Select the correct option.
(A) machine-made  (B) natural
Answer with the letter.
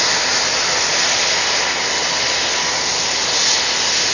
B